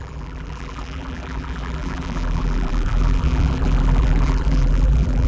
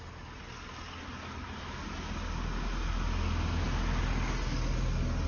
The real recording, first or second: second